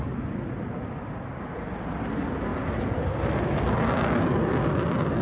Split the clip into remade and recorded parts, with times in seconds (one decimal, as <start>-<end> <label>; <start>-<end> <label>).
0.0-2.5 recorded; 2.5-3.8 remade; 3.8-5.2 recorded